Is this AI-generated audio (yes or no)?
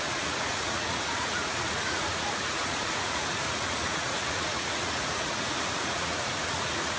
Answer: yes